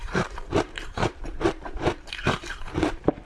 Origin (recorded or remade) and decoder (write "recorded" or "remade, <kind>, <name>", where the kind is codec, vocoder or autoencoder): remade, vocoder, BigVGAN v2